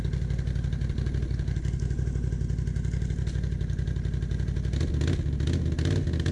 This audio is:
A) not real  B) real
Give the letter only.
B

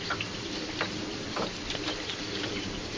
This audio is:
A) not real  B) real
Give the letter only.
B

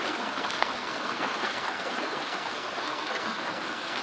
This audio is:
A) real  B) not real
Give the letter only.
B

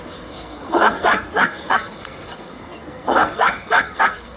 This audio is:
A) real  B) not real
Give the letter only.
B